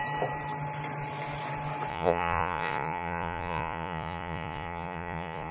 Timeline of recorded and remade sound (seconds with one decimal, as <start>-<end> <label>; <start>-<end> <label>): 0.0-1.9 recorded; 1.9-5.5 remade